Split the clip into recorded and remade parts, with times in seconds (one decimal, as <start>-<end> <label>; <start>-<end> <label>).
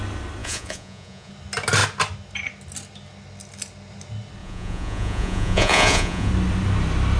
0.0-0.4 recorded; 0.4-1.3 remade; 1.3-4.4 recorded; 4.4-6.3 remade; 6.3-7.2 recorded